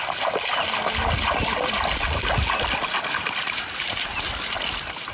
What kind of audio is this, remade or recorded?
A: recorded